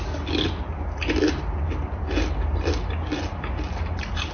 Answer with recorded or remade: recorded